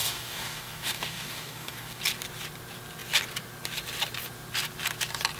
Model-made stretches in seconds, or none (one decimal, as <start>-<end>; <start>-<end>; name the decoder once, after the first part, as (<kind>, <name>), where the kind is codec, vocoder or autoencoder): 0.0-2.0 (codec, DAC)